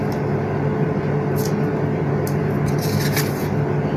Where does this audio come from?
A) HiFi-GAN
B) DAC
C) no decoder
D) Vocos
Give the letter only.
C